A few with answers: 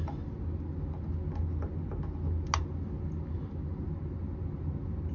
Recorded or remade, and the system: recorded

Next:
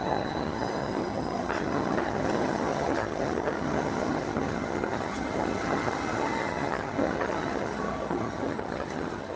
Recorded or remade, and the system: remade, vocoder, HiFi-GAN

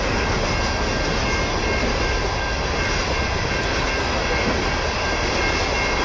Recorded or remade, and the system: recorded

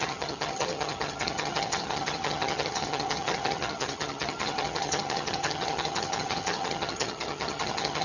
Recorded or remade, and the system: remade, vocoder, HiFi-GAN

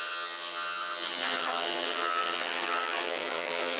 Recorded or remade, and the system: remade, vocoder, HiFi-GAN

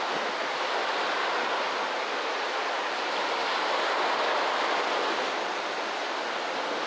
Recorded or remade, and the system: recorded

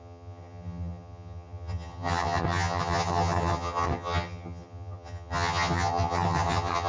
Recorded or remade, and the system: remade, vocoder, HiFi-GAN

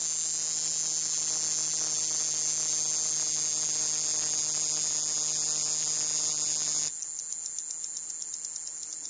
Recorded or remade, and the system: recorded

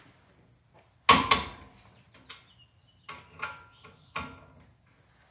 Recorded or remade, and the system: recorded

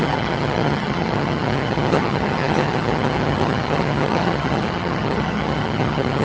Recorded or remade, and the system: remade, vocoder, HiFi-GAN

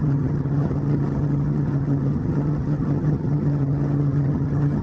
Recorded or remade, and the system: remade, vocoder, HiFi-GAN